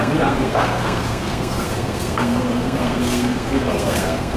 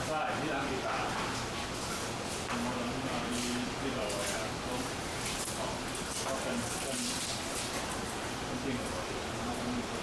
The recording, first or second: second